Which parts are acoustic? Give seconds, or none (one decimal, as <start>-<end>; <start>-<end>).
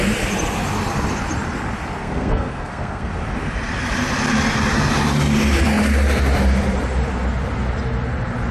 0.0-2.0; 3.1-8.5